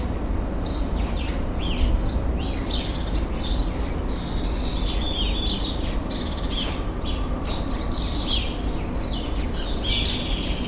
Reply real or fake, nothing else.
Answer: real